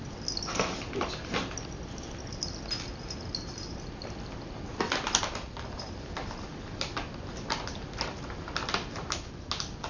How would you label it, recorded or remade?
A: recorded